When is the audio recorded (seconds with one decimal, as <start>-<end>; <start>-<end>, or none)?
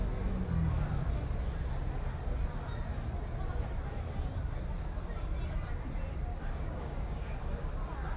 0.0-6.3; 7.7-8.2